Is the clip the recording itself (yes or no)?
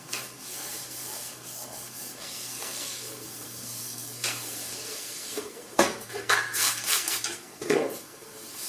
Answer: no